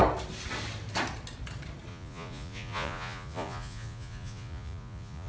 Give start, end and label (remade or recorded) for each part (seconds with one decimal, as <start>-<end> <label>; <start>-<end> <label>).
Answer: 0.0-1.9 recorded; 1.9-5.3 remade